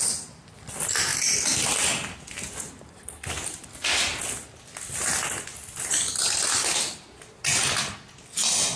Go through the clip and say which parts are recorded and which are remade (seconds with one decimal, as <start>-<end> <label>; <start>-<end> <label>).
0.0-8.8 recorded